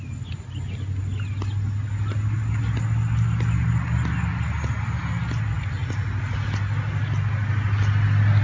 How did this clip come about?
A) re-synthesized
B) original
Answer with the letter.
B